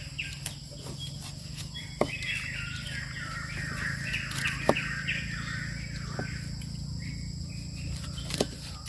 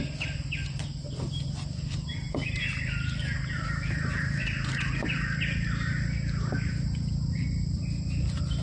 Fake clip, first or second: second